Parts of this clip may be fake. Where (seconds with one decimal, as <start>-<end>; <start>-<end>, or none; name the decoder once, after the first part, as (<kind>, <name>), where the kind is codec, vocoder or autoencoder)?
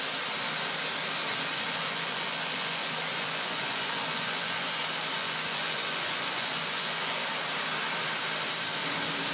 1.3-4.8 (vocoder, Vocos); 5.2-7.4